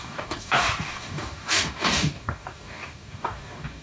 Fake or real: fake